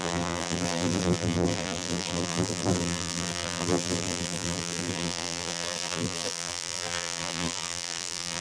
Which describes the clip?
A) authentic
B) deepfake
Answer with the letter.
B